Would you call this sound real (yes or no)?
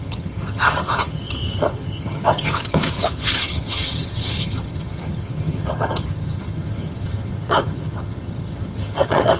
no